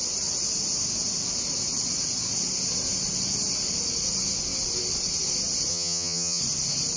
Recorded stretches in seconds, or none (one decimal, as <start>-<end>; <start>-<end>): 0.0-5.7; 6.4-7.0